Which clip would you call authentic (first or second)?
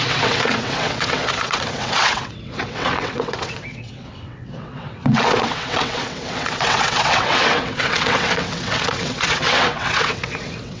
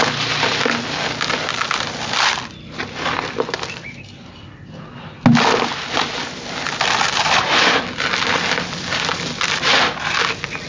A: second